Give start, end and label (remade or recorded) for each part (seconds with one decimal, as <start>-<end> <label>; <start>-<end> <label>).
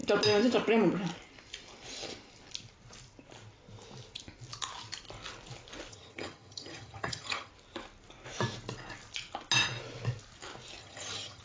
0.0-5.9 recorded; 5.9-7.5 remade; 7.5-10.8 recorded; 10.8-11.4 remade